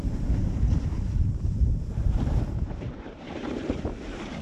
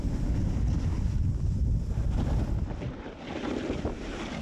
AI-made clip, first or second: first